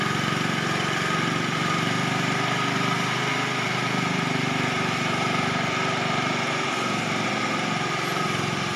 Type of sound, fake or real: fake